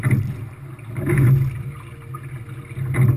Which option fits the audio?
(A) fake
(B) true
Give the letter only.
B